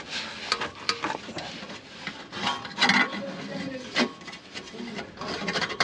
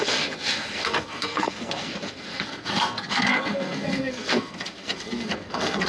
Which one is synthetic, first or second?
second